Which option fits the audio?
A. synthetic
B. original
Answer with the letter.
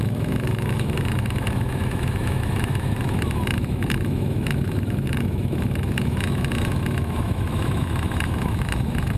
A